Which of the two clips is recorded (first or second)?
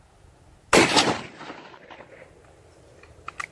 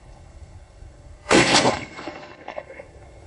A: first